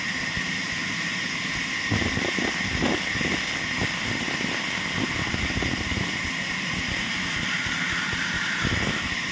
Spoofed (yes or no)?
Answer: no